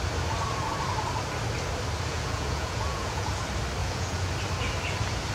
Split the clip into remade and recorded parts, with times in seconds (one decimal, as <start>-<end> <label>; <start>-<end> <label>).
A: 0.0-2.1 recorded; 2.1-3.3 remade; 3.3-3.8 recorded; 3.8-4.3 remade; 4.3-5.3 recorded

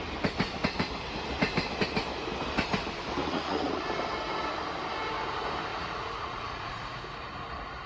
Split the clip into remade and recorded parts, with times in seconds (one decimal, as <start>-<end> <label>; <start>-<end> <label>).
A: 0.0-3.2 recorded; 3.2-3.8 remade; 3.8-5.7 recorded; 5.7-6.8 remade; 6.8-7.9 recorded

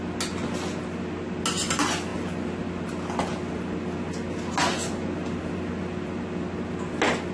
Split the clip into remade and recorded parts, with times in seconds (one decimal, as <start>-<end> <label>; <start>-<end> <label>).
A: 0.0-7.3 recorded

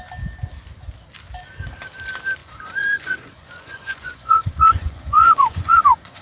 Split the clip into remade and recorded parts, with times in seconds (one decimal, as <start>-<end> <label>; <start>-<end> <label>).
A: 0.0-2.4 recorded; 2.4-6.2 remade

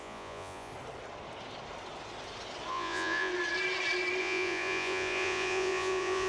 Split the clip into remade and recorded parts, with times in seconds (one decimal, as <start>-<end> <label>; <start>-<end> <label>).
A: 0.0-0.7 remade; 0.7-2.7 recorded; 2.7-3.3 remade; 3.3-4.2 recorded; 4.2-6.3 remade

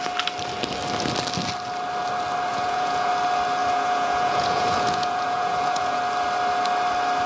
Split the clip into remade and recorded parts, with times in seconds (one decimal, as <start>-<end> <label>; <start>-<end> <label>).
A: 0.0-2.5 recorded; 2.5-3.1 remade; 3.1-3.6 recorded; 3.6-6.0 remade; 6.0-7.3 recorded